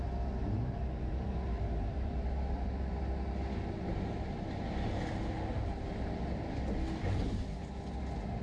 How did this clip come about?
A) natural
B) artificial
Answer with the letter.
A